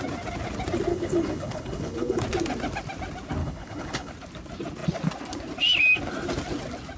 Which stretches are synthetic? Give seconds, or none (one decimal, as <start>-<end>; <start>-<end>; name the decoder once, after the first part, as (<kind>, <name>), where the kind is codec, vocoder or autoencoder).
0.9-2.2 (codec, HILCodec); 3.4-4.1